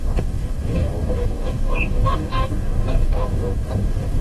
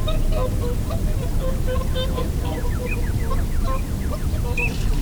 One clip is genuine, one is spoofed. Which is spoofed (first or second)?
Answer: first